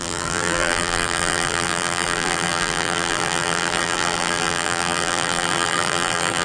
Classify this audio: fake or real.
fake